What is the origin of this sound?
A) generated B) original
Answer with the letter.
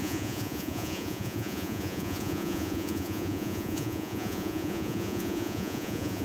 A